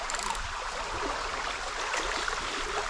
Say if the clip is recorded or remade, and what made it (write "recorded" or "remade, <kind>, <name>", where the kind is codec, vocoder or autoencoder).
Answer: recorded